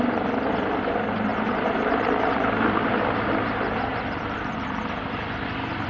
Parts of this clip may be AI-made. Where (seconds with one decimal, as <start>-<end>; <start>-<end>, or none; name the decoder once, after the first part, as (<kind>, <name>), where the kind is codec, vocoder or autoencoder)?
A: 1.3-4.8 (vocoder, BigVGAN v2)